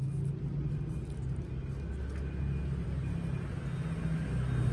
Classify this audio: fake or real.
real